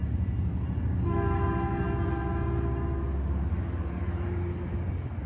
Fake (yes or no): no